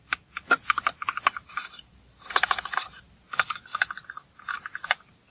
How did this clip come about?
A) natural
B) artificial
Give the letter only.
A